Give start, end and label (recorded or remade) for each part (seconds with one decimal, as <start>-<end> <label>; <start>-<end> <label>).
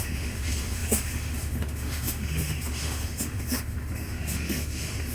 0.0-5.1 remade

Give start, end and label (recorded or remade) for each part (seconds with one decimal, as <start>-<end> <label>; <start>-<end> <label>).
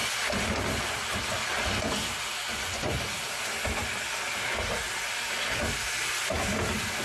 0.0-2.4 recorded; 2.4-3.0 remade; 3.0-7.0 recorded